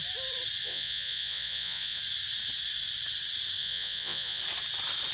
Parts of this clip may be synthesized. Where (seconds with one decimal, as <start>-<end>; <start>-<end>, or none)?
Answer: 0.6-2.0; 3.6-4.4